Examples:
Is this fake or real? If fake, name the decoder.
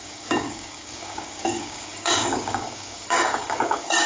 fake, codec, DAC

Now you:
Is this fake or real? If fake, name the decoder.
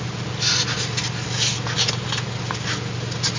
real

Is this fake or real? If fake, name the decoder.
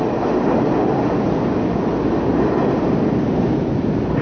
real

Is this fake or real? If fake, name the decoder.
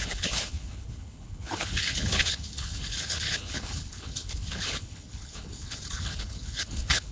fake, codec, HILCodec